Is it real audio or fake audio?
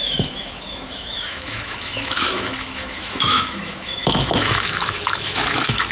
fake